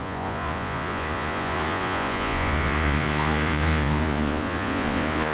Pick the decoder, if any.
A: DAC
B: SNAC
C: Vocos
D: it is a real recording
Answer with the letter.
C